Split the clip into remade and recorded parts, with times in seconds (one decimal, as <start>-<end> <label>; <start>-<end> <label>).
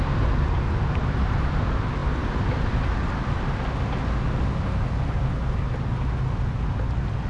0.0-7.3 recorded